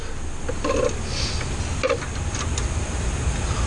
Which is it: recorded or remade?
recorded